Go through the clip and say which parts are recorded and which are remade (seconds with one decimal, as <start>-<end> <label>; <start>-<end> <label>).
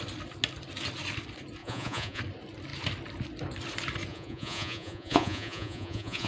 0.0-1.6 recorded; 1.6-2.2 remade; 2.2-4.1 recorded; 4.1-6.3 remade